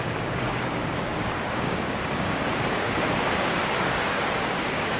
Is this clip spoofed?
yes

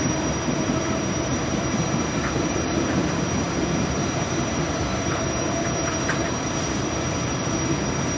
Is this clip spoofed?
yes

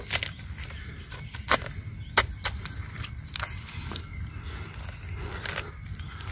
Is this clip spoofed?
no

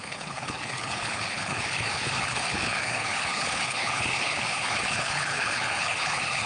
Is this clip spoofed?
yes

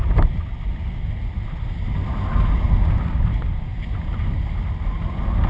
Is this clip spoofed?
no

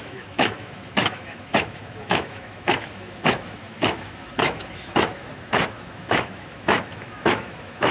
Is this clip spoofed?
yes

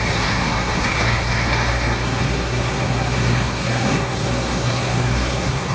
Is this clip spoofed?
yes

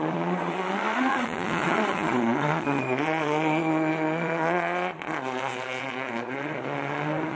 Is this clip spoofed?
yes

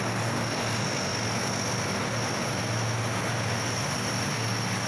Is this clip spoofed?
no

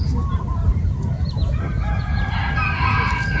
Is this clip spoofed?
no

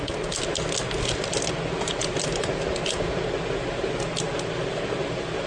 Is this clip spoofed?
no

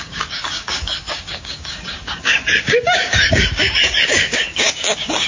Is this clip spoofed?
yes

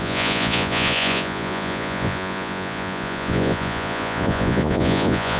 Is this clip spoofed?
yes